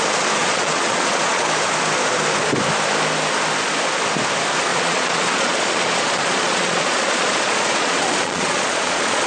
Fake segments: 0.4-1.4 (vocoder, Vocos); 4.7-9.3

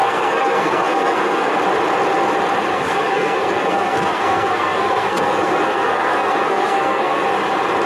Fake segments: 0.0-1.6 (codec, SNAC); 2.7-7.2

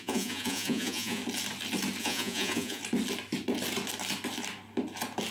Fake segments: 0.0-1.2 (vocoder, Vocos); 2.0-2.8

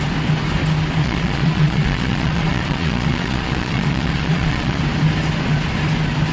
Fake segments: 1.0-4.8 (vocoder, Vocos)